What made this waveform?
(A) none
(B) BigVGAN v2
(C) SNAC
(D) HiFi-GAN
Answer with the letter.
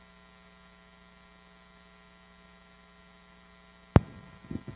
A